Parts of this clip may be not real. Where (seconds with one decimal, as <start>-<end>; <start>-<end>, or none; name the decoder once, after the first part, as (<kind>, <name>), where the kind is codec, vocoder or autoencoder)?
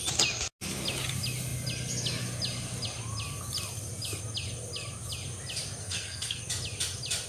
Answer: 5.8-6.4 (codec, SNAC)